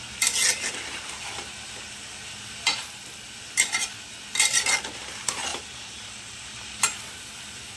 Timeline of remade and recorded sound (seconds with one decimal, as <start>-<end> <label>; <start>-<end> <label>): 0.0-5.5 recorded; 5.5-6.7 remade; 6.7-7.8 recorded